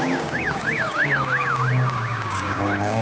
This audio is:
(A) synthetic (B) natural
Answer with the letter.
A